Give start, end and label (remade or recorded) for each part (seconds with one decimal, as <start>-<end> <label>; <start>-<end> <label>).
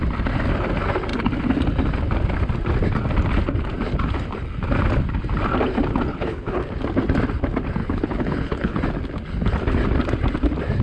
0.0-6.1 recorded; 6.1-6.6 remade; 6.6-7.8 recorded; 7.8-8.8 remade; 8.8-10.8 recorded